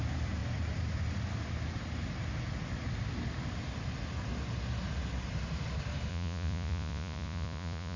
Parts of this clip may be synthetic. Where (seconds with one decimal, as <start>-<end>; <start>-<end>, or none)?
6.1-8.0